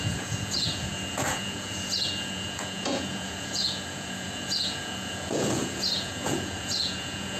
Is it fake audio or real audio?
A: fake